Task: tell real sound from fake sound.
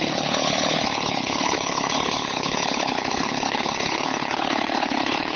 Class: fake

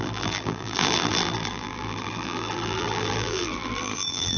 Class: fake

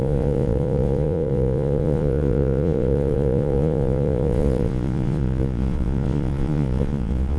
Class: fake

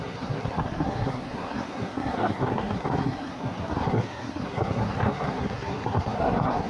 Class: fake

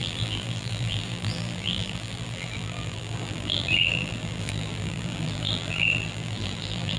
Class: fake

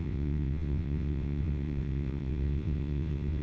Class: fake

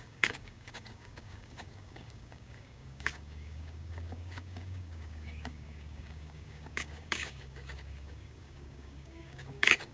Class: fake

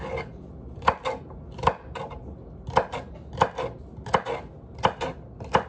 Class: real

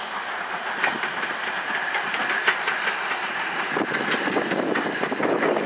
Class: real